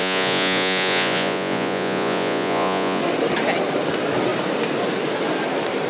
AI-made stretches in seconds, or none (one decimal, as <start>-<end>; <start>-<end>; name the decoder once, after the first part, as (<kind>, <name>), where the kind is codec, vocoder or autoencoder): 0.0-3.0 (vocoder, Vocos)